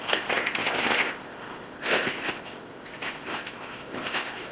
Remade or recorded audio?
remade